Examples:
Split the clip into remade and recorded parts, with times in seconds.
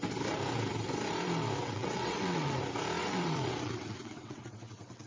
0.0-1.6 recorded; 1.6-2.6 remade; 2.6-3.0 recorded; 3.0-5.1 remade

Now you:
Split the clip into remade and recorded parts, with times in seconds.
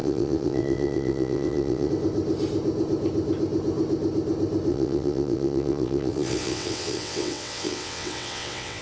0.0-1.9 remade; 1.9-4.7 recorded; 4.7-8.8 remade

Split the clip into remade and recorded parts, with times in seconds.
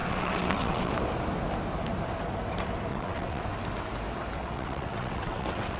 0.0-0.9 remade; 0.9-2.9 recorded; 2.9-3.4 remade; 3.4-4.4 recorded; 4.4-5.8 remade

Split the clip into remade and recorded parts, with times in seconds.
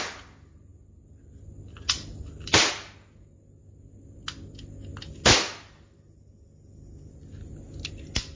0.0-8.4 recorded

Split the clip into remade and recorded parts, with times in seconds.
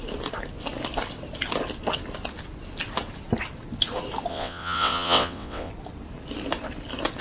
0.0-4.3 recorded; 4.3-5.7 remade; 5.7-7.2 recorded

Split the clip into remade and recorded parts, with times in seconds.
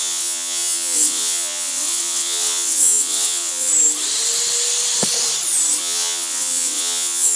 0.0-3.7 remade; 3.7-5.8 recorded; 5.8-7.4 remade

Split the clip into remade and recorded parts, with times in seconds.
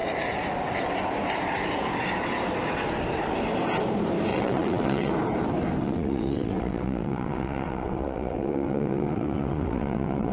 0.0-4.3 recorded; 4.3-5.1 remade; 5.1-5.8 recorded; 5.8-10.3 remade